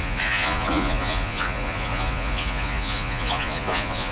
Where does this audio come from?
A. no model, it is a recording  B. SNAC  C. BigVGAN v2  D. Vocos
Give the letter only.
D